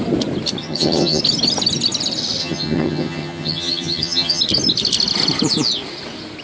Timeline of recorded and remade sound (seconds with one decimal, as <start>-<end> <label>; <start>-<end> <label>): 0.0-0.6 recorded; 0.6-1.2 remade; 1.2-2.4 recorded; 2.4-4.4 remade; 4.4-6.4 recorded